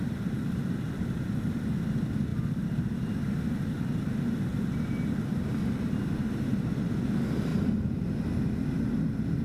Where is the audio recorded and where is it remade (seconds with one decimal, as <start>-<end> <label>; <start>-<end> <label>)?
0.0-9.4 recorded